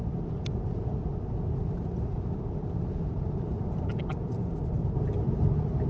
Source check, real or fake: real